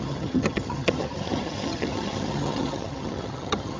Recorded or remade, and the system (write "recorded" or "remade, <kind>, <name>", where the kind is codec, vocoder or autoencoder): remade, vocoder, HiFi-GAN